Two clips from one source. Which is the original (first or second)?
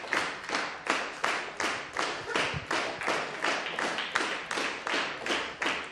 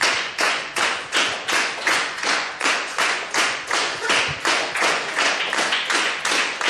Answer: first